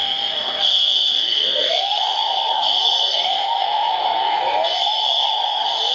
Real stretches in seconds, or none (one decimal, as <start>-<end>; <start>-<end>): none